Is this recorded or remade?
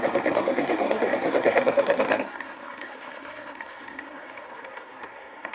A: remade